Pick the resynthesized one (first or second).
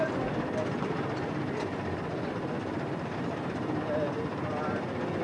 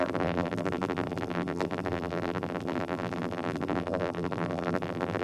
second